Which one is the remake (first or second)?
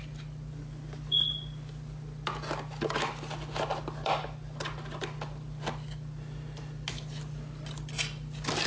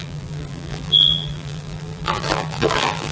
second